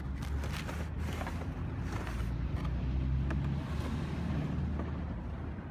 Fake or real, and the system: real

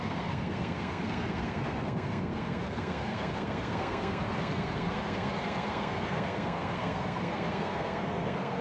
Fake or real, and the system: fake, codec, SNAC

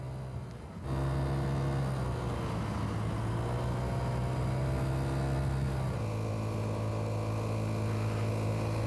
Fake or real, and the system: real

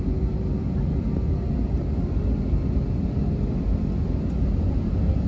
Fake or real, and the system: real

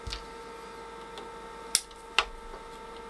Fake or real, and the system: real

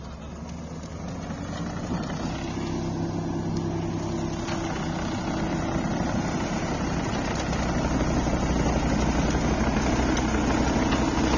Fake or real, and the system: real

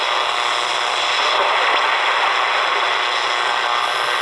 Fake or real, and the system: real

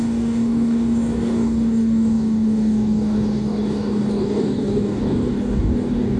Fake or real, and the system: fake, codec, DAC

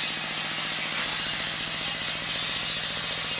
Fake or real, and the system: real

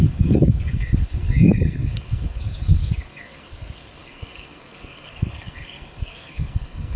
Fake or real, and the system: fake, codec, SNAC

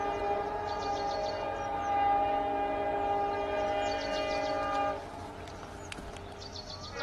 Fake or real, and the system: real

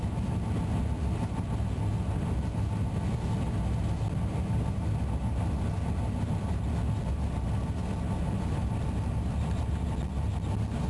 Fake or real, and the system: real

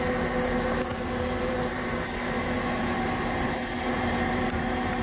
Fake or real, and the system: fake, vocoder, BigVGAN v2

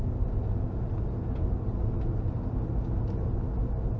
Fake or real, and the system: real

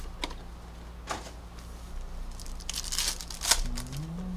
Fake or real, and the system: real